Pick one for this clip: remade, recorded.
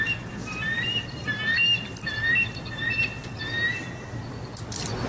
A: recorded